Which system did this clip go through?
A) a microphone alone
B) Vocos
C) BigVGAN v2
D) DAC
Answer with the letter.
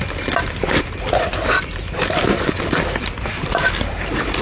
C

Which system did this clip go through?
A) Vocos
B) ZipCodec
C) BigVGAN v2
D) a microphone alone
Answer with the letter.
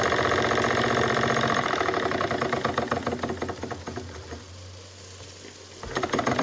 C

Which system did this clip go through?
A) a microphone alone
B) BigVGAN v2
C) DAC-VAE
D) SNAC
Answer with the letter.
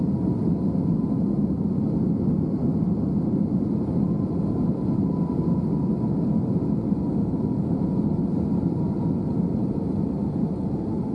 A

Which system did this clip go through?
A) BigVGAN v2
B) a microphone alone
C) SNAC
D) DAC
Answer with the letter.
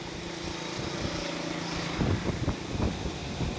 B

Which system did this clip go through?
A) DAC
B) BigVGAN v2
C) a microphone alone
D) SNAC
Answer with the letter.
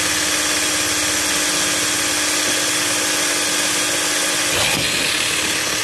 C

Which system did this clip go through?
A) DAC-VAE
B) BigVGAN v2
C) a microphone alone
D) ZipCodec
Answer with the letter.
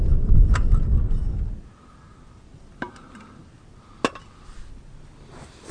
C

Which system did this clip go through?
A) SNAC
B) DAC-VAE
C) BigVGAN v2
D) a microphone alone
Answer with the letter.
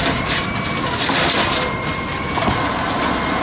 D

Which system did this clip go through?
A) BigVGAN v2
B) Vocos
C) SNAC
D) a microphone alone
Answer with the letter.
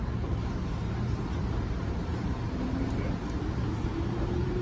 A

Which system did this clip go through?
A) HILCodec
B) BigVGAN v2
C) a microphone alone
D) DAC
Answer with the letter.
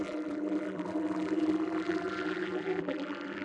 B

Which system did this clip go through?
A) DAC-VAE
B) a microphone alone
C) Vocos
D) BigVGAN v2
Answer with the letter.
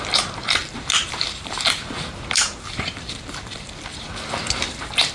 D